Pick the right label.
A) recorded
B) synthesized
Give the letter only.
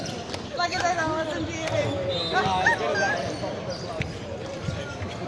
A